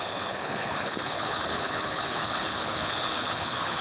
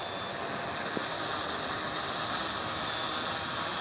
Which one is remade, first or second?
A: first